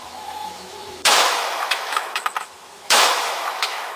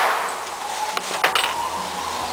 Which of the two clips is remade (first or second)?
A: first